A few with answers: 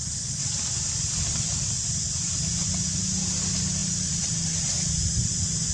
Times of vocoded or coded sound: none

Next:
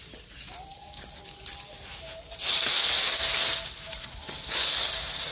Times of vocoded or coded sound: none

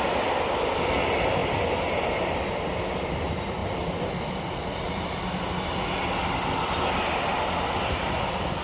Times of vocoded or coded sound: none